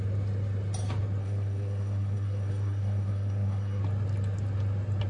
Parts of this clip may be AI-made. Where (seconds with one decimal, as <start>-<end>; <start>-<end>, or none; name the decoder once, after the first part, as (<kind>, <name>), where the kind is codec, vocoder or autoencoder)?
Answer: 1.2-3.8 (codec, SNAC)